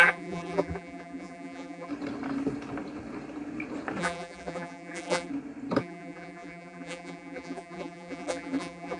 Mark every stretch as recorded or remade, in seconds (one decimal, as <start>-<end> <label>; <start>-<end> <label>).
0.0-1.9 remade; 1.9-4.0 recorded; 4.0-5.3 remade; 5.3-5.8 recorded; 5.8-9.0 remade